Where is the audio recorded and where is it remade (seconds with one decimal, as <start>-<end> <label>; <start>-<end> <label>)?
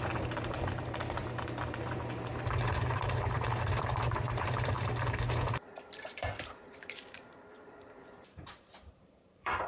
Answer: 0.0-1.2 remade; 1.2-1.8 recorded; 1.8-9.7 remade